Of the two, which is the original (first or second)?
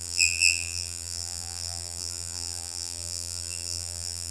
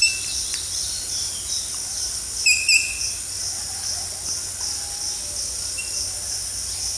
second